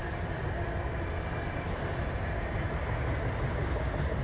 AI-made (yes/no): no